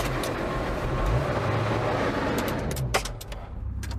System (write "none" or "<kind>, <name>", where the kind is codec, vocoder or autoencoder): none